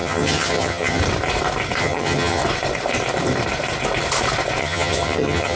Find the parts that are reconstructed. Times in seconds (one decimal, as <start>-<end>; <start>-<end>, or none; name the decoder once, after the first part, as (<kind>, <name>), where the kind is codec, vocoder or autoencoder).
0.0-1.0 (vocoder, HiFi-GAN); 1.8-2.4; 4.6-5.6